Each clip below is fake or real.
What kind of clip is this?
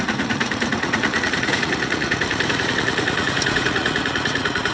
fake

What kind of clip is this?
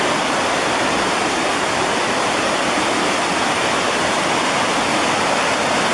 real